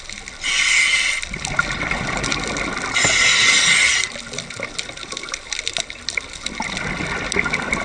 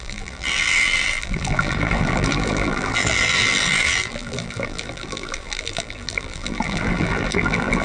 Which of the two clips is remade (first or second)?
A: second